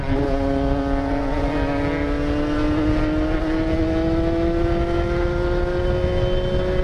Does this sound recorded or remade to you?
recorded